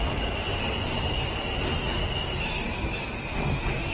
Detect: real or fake real